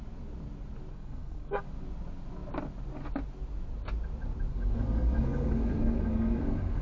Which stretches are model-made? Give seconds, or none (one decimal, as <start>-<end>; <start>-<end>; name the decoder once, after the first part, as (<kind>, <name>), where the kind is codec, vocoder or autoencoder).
0.9-1.6 (codec, SNAC); 4.5-6.8